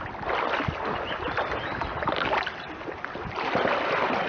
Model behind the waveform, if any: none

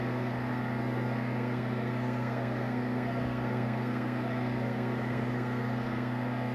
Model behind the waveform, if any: codec, SNAC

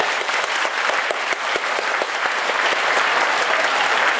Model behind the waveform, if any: vocoder, BigVGAN v2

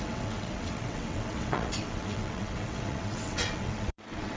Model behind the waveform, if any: vocoder, WaveNeXt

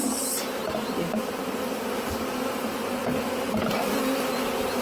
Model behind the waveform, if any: none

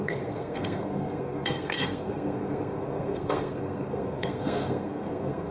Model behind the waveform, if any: codec, SNAC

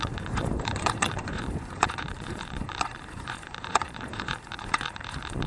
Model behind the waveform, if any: vocoder, Vocos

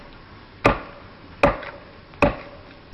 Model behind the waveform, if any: none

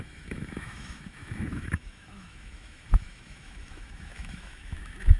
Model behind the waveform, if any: autoencoder, DAC-VAE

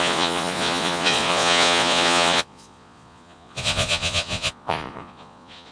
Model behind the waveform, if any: vocoder, Vocos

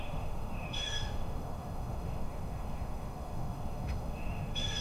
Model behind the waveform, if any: autoencoder, DAC-VAE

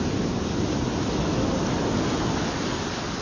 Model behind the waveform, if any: none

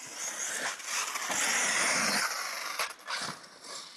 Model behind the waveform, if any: none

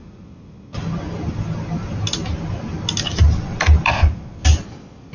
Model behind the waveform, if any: none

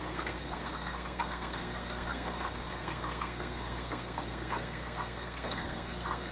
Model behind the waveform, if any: codec, SNAC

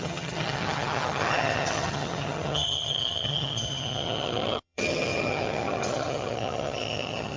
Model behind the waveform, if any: vocoder, HiFi-GAN